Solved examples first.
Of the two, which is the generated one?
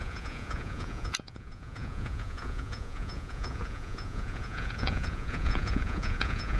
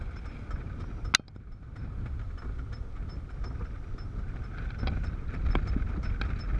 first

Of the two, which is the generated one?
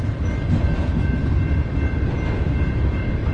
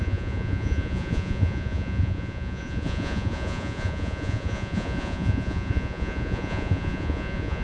second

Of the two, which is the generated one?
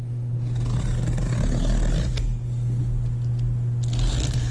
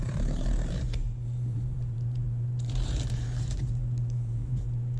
second